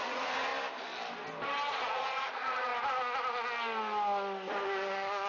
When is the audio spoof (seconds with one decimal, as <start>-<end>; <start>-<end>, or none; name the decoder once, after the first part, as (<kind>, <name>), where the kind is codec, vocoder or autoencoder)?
0.0-0.5 (vocoder, Vocos); 1.7-2.7